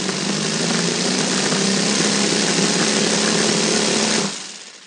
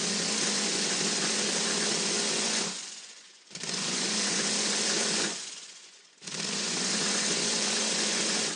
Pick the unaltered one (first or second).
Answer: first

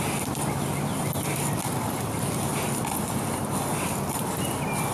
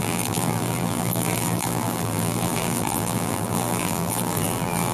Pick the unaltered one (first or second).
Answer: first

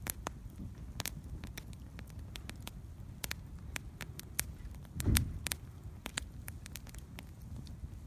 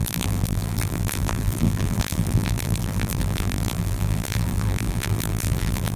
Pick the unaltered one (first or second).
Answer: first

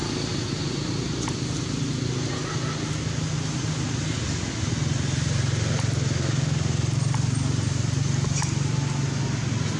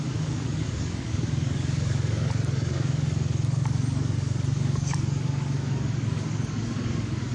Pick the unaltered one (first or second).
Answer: first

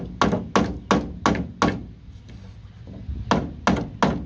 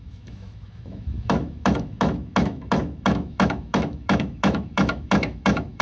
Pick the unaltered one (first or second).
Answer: first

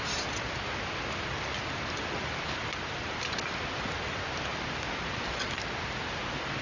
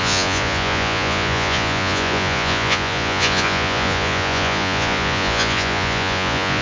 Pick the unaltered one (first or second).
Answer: first